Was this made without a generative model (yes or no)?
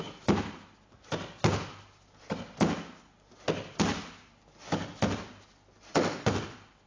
yes